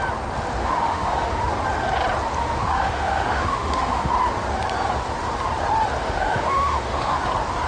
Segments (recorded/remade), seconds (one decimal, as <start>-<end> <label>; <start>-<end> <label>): 0.0-0.6 recorded; 0.6-1.4 remade; 1.4-2.4 recorded; 2.4-4.1 remade; 4.1-6.0 recorded; 6.0-7.2 remade; 7.2-7.7 recorded

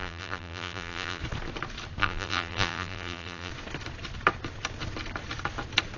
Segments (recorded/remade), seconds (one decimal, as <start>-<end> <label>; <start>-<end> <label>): 0.0-1.2 remade; 1.2-2.0 recorded; 2.0-3.5 remade; 3.5-6.0 recorded